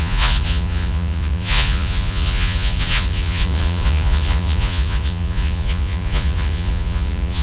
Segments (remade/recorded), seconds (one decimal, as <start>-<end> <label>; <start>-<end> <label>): 0.0-7.4 remade

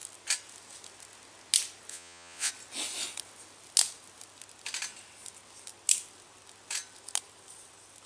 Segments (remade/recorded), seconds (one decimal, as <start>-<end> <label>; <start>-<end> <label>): 0.0-1.9 recorded; 1.9-2.5 remade; 2.5-8.1 recorded

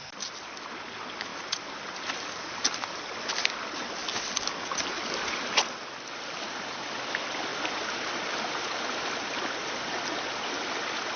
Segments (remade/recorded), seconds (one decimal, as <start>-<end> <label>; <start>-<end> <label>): 0.0-11.2 recorded

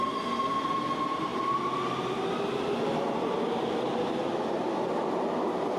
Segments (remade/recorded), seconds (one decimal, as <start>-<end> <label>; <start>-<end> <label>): 0.0-5.8 recorded

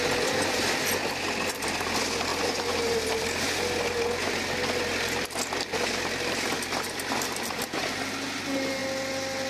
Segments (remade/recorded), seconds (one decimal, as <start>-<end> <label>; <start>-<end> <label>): 0.0-9.5 recorded